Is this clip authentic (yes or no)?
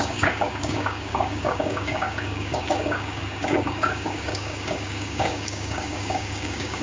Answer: no